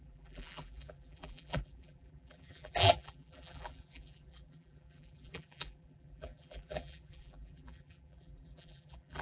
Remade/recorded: remade